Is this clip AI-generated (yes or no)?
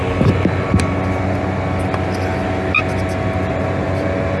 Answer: no